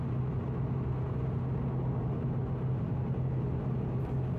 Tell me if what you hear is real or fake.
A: real